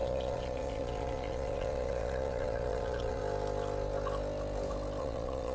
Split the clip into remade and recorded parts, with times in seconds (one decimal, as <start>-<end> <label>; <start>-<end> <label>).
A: 0.0-3.2 remade; 3.2-5.0 recorded; 5.0-5.5 remade